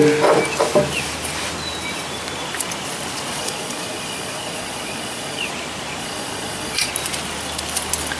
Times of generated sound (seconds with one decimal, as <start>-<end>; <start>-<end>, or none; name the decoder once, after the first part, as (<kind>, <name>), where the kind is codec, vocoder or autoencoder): 3.4-5.5 (vocoder, Vocos); 6.0-6.9